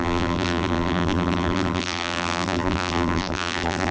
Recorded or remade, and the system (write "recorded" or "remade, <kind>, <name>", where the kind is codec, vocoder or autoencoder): remade, vocoder, BigVGAN v2